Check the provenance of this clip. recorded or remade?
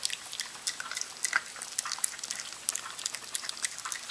recorded